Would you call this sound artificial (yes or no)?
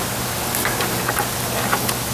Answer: no